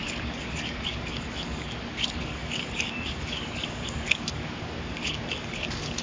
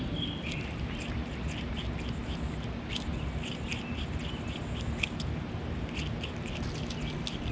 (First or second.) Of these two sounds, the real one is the second